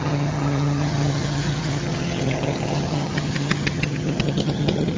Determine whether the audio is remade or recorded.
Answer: remade